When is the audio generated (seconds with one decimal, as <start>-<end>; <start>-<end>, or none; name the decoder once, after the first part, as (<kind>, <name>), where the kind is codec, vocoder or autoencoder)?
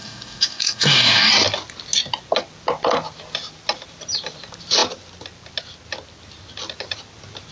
0.0-1.3 (codec, DAC)